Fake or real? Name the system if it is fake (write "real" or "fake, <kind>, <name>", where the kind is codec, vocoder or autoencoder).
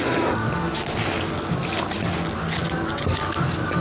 real